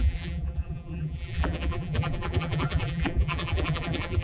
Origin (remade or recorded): remade